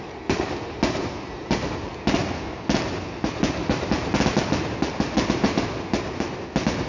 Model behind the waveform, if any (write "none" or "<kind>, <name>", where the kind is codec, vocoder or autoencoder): none